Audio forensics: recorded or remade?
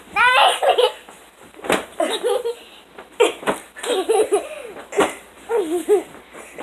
recorded